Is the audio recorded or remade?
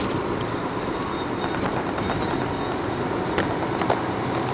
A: recorded